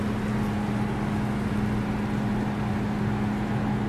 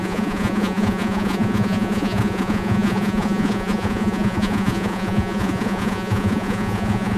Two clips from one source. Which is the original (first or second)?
first